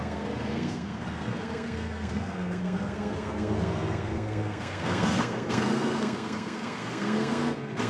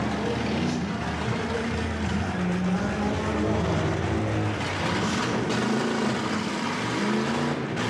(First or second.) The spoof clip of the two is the first